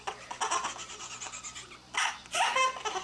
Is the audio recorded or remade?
recorded